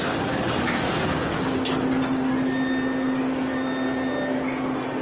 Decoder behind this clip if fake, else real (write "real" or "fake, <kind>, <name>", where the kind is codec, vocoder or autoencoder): real